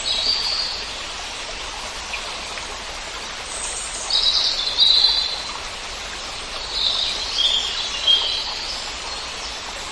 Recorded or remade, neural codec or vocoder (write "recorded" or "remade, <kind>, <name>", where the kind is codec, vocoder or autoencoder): recorded